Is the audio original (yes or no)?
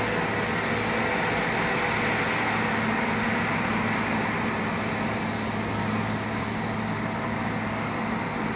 yes